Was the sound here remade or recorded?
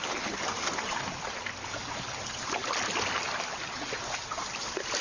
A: recorded